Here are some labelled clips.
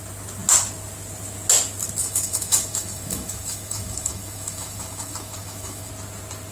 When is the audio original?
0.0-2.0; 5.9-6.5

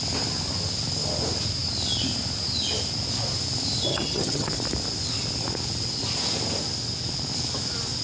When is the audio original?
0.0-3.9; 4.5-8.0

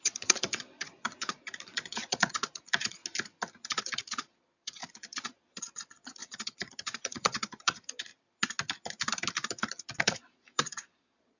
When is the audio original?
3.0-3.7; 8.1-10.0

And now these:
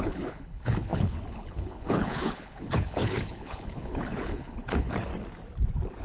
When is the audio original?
5.1-6.0